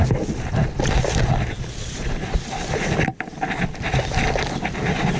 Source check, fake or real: real